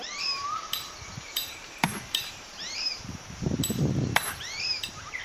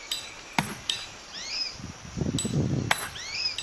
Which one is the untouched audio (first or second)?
second